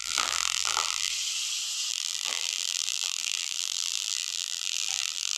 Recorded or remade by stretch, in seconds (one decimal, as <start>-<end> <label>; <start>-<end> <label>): 0.0-1.1 remade; 1.1-1.9 recorded; 1.9-5.4 remade